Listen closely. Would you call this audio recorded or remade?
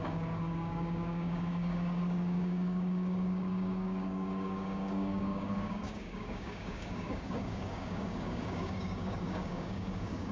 remade